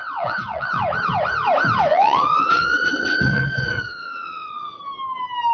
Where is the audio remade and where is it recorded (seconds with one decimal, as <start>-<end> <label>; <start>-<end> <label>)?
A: 0.0-0.8 remade; 0.8-1.9 recorded; 1.9-4.8 remade; 4.8-5.5 recorded